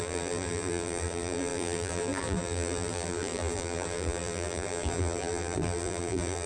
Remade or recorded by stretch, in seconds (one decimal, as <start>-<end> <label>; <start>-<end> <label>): 0.0-6.5 remade